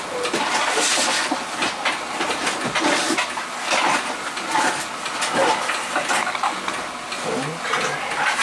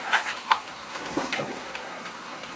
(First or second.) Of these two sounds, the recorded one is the first